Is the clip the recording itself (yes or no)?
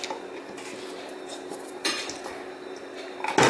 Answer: yes